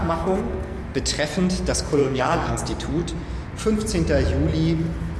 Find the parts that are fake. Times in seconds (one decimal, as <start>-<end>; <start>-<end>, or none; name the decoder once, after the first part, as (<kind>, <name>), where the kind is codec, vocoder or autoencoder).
0.0-0.8 (codec, SNAC); 2.0-2.6